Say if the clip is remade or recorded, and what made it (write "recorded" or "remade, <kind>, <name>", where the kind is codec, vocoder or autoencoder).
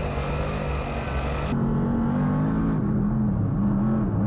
recorded